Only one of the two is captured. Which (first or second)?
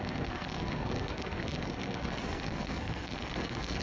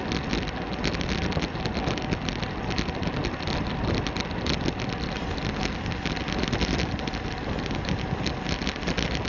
second